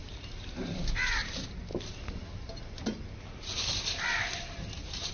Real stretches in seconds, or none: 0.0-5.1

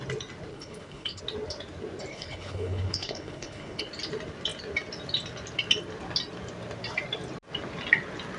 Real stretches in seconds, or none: 0.0-0.5; 1.2-2.1; 3.8-8.4

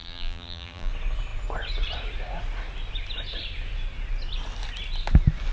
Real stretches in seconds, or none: 0.9-5.5

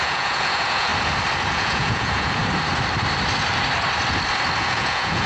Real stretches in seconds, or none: 0.9-1.5; 2.4-4.6

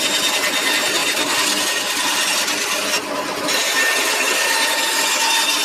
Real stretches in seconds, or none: 0.0-5.6

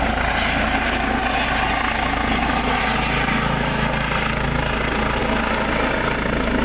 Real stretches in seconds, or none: 0.0-6.6